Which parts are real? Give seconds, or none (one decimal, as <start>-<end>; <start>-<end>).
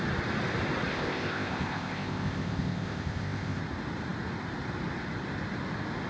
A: 0.0-0.9; 3.6-6.1